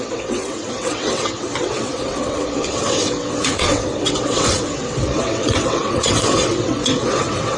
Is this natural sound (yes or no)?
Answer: no